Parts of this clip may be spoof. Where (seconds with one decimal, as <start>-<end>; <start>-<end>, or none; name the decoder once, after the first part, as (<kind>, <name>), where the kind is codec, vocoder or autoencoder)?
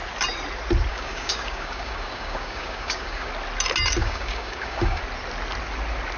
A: 0.9-3.3 (codec, DAC); 4.0-5.0